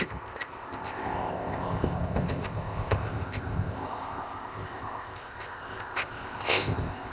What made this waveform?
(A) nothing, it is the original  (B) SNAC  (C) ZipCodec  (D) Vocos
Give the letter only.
C